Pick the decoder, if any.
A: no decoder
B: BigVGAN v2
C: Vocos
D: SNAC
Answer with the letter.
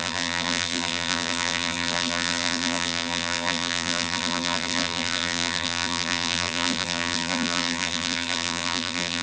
B